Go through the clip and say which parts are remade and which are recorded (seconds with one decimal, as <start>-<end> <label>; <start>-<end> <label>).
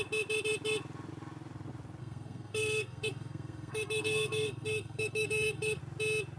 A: 0.0-2.0 recorded; 2.0-5.8 remade; 5.8-6.4 recorded